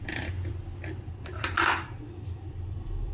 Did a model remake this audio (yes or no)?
yes